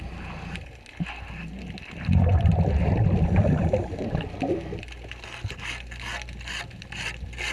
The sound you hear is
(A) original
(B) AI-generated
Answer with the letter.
A